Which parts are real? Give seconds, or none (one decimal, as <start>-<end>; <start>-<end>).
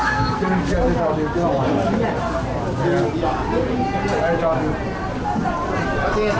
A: 0.6-6.4